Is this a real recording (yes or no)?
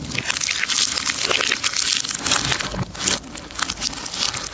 yes